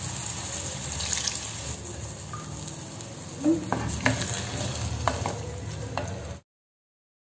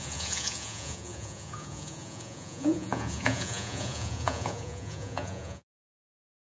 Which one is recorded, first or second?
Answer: first